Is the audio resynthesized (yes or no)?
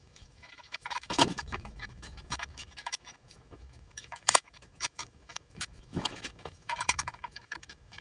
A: yes